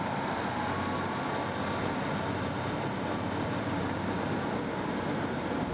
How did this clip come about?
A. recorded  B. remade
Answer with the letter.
A